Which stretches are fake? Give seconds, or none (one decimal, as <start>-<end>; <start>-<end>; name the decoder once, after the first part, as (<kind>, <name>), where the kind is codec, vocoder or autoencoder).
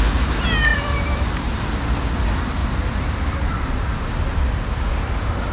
0.7-1.6 (vocoder, BigVGAN v2); 2.6-3.5; 3.9-4.9